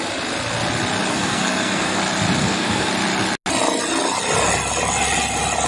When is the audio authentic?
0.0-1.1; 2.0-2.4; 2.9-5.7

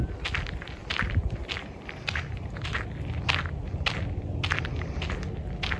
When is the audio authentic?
0.0-5.8

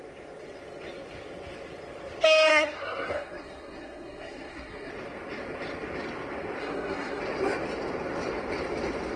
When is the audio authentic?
0.0-2.5; 4.9-6.6; 7.2-9.2

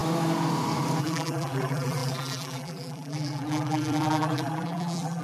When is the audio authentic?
0.0-1.0

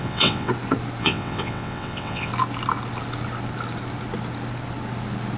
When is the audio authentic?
0.5-1.0; 2.3-5.4

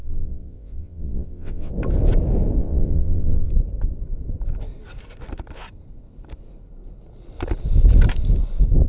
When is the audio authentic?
1.7-2.6; 3.5-8.9